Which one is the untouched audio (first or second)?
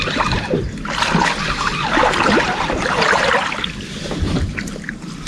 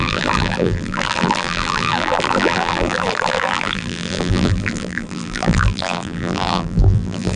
first